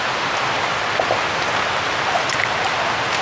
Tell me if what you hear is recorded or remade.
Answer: recorded